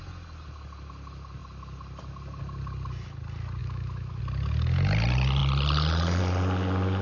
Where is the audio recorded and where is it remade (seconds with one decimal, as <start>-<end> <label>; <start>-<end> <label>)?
0.0-3.6 recorded; 3.6-4.2 remade; 4.2-7.0 recorded